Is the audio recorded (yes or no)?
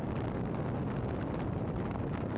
yes